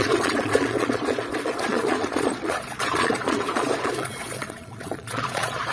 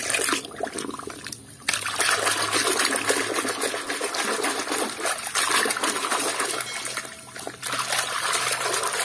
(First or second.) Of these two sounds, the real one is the second